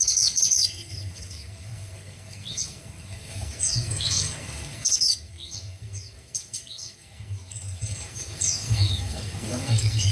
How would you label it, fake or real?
fake